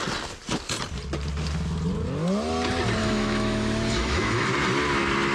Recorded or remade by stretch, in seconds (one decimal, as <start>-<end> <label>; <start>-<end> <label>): 0.0-3.0 recorded; 3.0-4.5 remade; 4.5-5.3 recorded